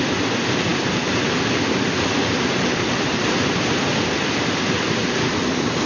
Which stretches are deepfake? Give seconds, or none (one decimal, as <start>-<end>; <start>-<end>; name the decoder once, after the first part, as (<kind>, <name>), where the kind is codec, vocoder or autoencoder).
0.0-5.0 (vocoder, BigVGAN v2)